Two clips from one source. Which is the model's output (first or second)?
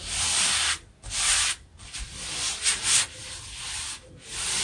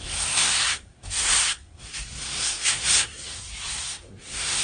second